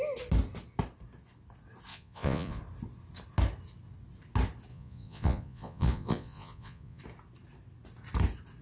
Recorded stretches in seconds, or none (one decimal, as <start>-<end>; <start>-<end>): 0.0-1.9; 2.6-4.7; 7.0-8.6